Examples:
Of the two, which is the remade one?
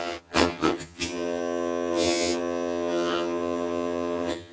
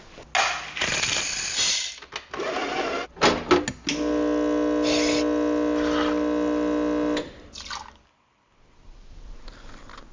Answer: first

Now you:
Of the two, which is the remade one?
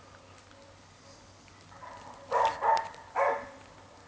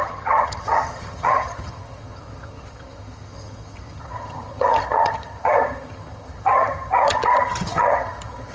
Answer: second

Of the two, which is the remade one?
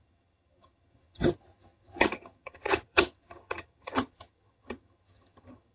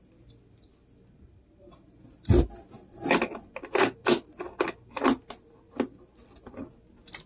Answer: first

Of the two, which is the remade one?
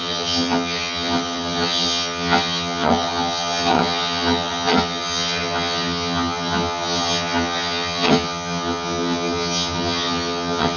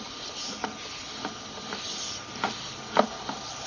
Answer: first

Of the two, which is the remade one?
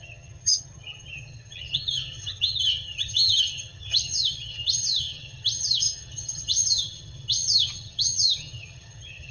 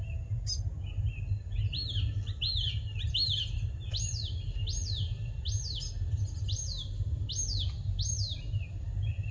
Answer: first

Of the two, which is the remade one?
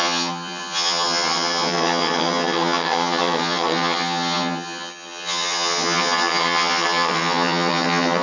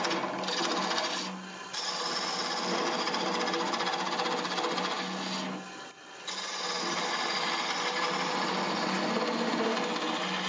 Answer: first